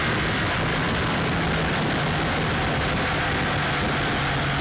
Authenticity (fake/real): real